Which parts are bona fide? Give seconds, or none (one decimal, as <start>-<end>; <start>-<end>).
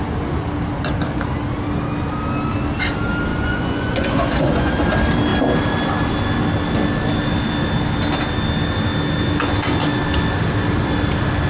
0.0-3.3; 4.7-11.5